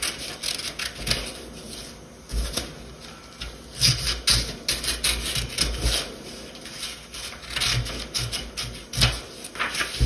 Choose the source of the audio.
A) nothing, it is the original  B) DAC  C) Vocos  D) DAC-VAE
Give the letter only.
A